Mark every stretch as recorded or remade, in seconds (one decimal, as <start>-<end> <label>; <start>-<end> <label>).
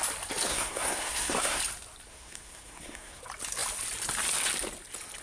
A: 0.0-0.5 recorded; 0.5-1.6 remade; 1.6-2.1 recorded; 2.1-3.2 remade; 3.2-5.2 recorded